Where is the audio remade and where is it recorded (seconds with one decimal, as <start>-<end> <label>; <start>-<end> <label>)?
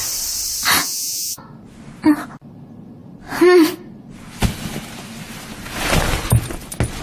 0.0-0.8 recorded; 0.8-1.4 remade; 1.4-7.0 recorded